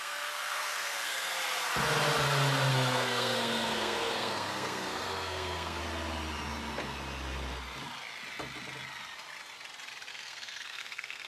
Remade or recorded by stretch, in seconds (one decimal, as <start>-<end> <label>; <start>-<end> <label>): 0.0-1.3 remade; 1.3-2.7 recorded; 2.7-5.8 remade; 5.8-10.1 recorded; 10.1-11.3 remade